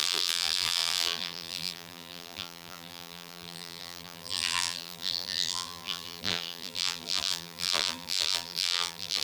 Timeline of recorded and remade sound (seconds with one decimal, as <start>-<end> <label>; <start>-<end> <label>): 0.0-9.2 remade

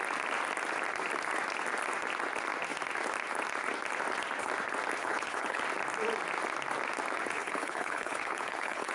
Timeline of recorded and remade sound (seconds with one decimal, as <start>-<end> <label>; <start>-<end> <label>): 0.0-5.0 recorded; 5.0-5.6 remade; 5.6-7.4 recorded; 7.4-8.9 remade

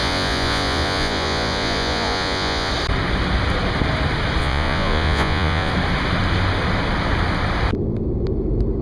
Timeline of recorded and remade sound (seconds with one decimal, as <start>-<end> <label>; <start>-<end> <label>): 0.0-2.7 remade; 2.7-4.4 recorded; 4.4-5.7 remade; 5.7-8.8 recorded